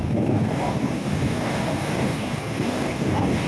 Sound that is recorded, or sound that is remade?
remade